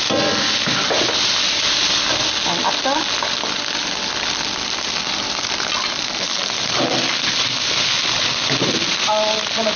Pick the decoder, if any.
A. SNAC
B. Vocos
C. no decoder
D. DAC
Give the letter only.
C